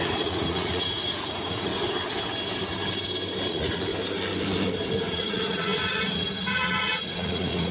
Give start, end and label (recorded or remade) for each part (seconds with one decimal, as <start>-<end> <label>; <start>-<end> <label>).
0.0-1.7 remade; 1.7-3.5 recorded; 3.5-3.9 remade; 3.9-5.1 recorded; 5.1-7.7 remade